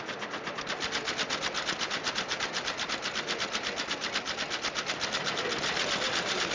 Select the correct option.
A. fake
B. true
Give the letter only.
B